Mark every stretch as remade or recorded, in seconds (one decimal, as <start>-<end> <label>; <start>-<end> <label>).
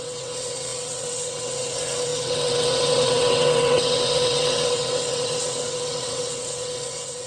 0.0-7.3 remade